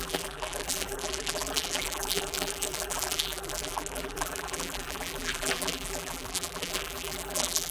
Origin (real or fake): fake